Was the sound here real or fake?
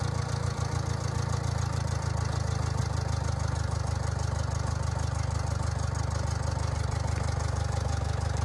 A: real